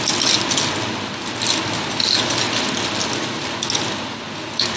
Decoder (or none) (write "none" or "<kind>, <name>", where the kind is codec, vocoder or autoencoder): none